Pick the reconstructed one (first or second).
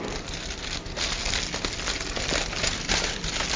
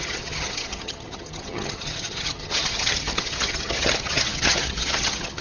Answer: second